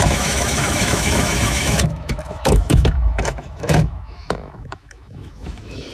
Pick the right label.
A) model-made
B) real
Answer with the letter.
A